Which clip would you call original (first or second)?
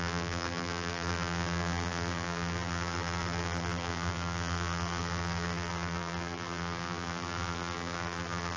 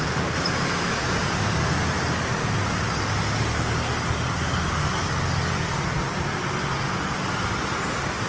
second